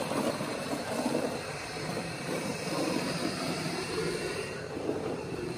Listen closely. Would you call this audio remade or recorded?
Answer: remade